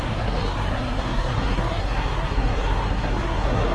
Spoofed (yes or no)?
yes